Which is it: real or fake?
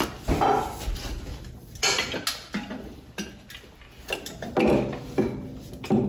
real